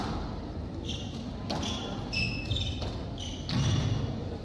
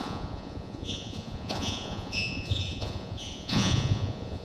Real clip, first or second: first